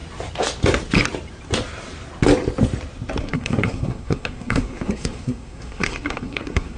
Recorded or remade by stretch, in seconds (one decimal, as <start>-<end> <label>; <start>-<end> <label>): 0.0-3.2 recorded; 3.2-6.8 remade